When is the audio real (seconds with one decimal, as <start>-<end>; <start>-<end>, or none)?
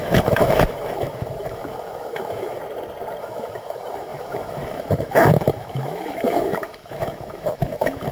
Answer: 2.6-3.2